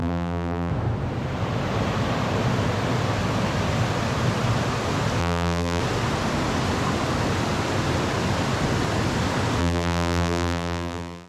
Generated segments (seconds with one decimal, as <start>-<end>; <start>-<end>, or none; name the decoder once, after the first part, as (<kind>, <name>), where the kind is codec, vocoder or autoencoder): 0.0-0.7 (vocoder, BigVGAN v2); 5.2-5.8; 9.6-11.3